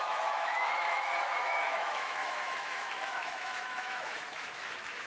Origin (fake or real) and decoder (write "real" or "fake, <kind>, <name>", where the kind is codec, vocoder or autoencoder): fake, autoencoder, DAC-VAE